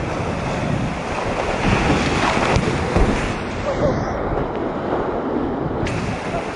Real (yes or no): yes